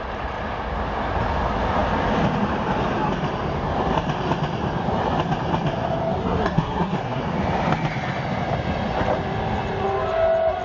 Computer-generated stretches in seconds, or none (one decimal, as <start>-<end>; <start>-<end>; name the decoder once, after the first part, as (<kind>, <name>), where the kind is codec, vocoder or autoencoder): 6.2-7.2 (codec, SNAC)